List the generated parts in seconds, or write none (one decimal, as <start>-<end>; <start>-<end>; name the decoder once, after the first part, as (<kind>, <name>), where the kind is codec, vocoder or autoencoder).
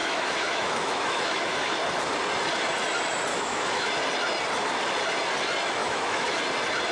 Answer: 0.0-1.7 (autoencoder, DAC-VAE); 3.3-3.9; 5.8-6.4